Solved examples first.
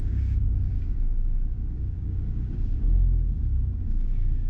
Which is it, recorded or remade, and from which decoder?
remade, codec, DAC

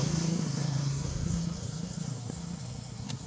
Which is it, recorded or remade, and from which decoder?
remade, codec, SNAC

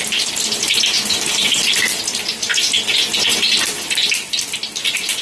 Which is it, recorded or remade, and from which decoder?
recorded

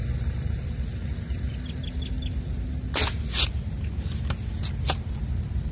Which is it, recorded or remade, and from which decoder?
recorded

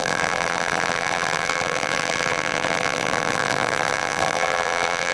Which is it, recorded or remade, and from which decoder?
remade, vocoder, BigVGAN v2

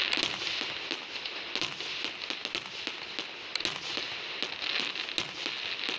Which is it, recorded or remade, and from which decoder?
recorded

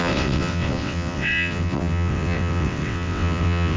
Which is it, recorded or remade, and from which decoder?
remade, vocoder, WaveNeXt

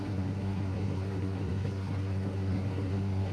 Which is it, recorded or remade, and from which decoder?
remade, codec, SNAC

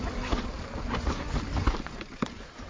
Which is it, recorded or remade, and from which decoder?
remade, vocoder, BigVGAN v2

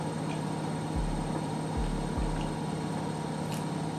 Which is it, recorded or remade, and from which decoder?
recorded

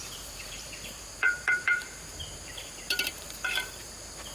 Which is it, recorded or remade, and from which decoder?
remade, vocoder, BigVGAN v2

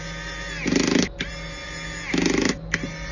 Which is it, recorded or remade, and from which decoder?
recorded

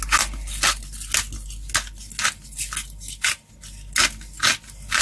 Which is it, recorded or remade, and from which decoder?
recorded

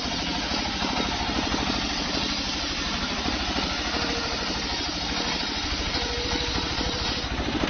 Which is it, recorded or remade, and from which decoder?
remade, vocoder, BigVGAN v2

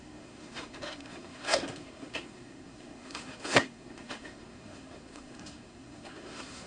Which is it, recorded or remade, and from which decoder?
remade, codec, SNAC